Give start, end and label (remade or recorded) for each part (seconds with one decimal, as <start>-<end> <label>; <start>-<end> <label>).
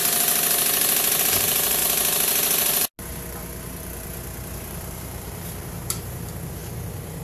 0.0-1.2 recorded; 1.2-1.8 remade; 1.8-4.7 recorded; 4.7-7.2 remade